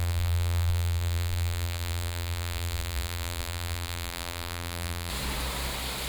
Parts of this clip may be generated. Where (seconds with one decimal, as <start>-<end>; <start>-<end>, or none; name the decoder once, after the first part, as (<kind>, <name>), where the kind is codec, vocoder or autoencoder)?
0.0-5.1 (vocoder, BigVGAN v2)